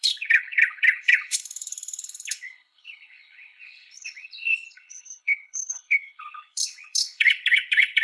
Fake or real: fake